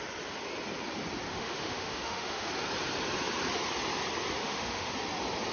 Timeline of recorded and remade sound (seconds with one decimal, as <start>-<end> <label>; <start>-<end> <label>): 0.0-1.3 recorded; 1.3-2.5 remade; 2.5-4.4 recorded; 4.4-4.9 remade; 4.9-5.5 recorded